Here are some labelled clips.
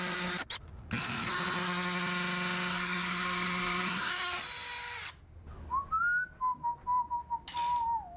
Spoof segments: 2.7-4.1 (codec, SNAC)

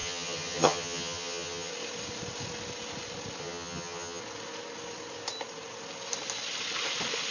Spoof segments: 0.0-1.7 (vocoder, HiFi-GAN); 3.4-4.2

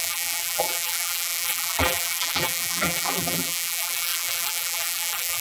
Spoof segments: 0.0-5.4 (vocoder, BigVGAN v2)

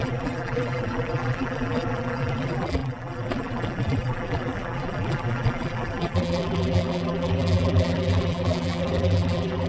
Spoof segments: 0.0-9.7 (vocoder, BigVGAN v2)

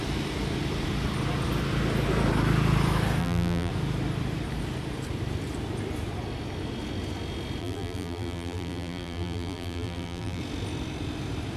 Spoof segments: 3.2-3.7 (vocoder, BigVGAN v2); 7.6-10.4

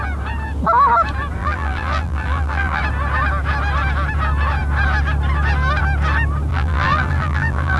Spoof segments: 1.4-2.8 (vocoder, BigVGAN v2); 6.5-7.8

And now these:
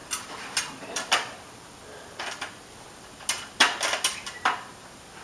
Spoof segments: none

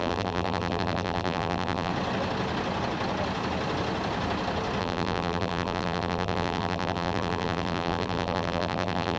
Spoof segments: 0.0-1.9 (vocoder, BigVGAN v2); 4.8-9.2